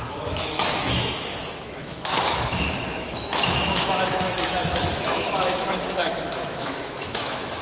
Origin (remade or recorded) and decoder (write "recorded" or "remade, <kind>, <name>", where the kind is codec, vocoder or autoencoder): remade, autoencoder, DAC-VAE